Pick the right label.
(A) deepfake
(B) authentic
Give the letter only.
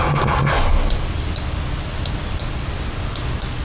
B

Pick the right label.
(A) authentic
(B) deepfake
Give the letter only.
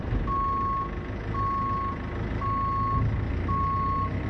A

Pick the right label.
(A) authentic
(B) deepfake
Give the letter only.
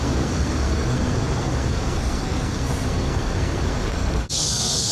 B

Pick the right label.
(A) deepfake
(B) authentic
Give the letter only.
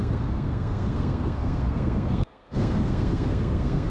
A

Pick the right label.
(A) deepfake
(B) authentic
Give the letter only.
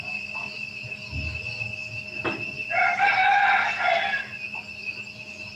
B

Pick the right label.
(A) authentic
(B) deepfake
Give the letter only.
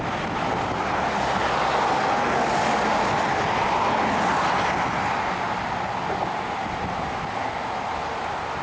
A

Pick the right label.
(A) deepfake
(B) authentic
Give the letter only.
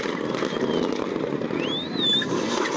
B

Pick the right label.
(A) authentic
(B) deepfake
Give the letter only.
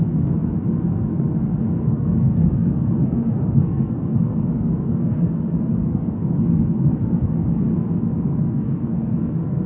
B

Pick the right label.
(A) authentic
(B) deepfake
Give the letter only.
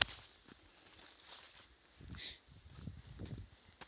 A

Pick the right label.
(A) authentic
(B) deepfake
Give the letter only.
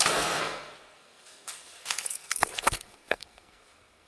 B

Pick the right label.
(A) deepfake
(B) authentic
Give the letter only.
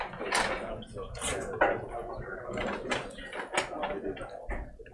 B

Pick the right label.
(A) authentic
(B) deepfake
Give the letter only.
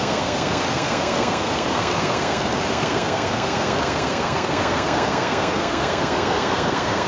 B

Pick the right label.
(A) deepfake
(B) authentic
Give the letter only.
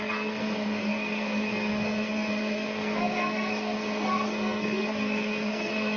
A